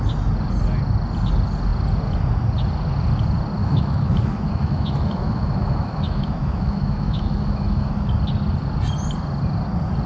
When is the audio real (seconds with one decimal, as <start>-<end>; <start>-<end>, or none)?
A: 0.0-3.6; 8.1-10.1